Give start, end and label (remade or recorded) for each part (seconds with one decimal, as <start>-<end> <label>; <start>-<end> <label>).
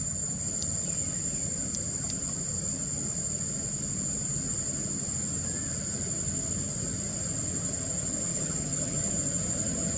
0.0-8.3 recorded; 8.3-9.1 remade; 9.1-10.0 recorded